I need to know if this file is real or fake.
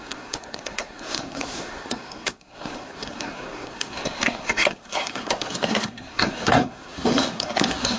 fake